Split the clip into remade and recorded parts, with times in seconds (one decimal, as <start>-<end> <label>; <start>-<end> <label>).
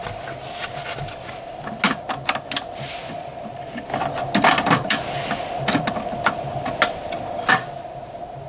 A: 0.0-0.6 recorded; 0.6-1.7 remade; 1.7-8.5 recorded